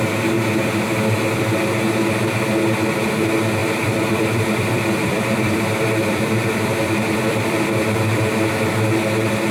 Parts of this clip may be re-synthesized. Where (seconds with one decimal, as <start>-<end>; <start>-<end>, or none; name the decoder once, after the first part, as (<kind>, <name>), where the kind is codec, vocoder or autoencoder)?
3.6-8.2 (vocoder, BigVGAN v2)